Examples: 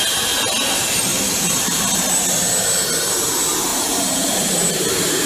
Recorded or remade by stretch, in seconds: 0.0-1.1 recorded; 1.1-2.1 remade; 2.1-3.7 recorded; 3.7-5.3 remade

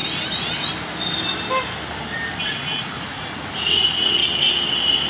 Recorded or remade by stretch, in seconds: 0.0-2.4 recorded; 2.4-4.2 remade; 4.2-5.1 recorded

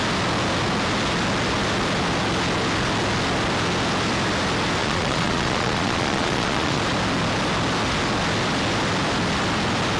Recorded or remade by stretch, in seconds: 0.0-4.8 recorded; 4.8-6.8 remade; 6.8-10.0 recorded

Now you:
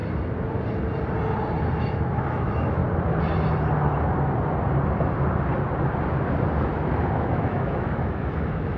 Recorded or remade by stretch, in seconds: 0.0-1.8 recorded; 1.8-2.8 remade; 2.8-7.2 recorded; 7.2-8.8 remade